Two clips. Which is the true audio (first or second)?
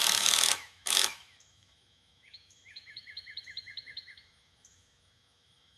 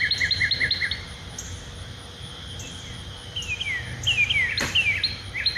second